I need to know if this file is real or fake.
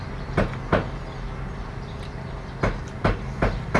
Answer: real